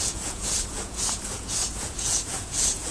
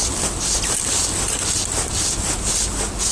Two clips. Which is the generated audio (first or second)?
first